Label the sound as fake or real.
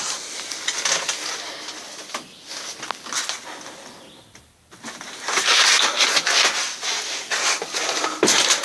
real